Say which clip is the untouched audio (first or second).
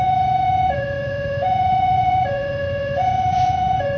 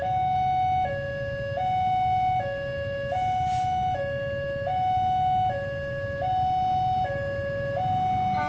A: second